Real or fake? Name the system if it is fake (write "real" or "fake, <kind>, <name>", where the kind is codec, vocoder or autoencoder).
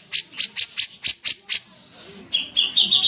real